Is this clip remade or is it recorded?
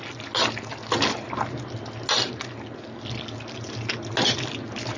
recorded